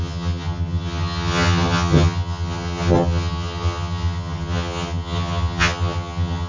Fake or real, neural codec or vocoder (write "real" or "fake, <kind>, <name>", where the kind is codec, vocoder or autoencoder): fake, vocoder, HiFi-GAN